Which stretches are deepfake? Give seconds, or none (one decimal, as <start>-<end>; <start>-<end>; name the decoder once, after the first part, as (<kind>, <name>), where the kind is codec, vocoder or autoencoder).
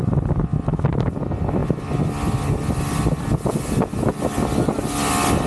0.7-1.2 (vocoder, BigVGAN v2)